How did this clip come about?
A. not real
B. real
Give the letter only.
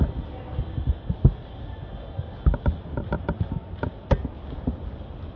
B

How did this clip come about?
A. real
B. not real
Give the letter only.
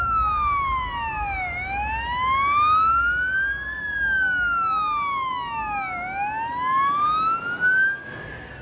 A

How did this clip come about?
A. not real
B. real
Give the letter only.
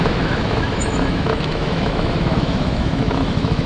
A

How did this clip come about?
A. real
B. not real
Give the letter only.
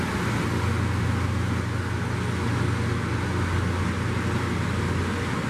A